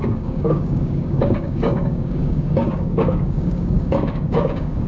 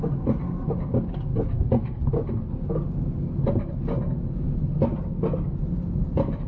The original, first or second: second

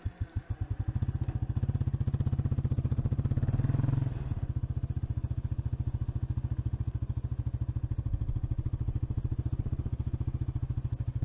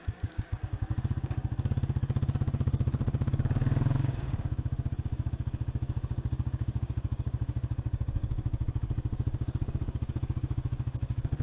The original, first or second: first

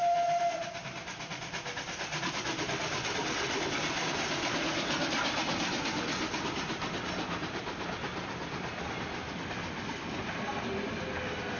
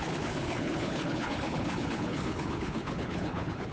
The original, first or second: first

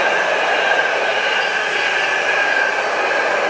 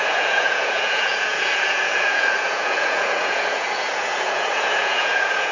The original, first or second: first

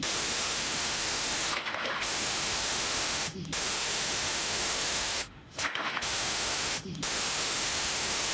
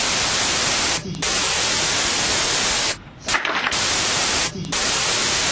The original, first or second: second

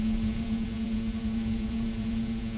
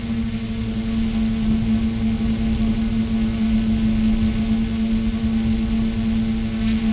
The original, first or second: second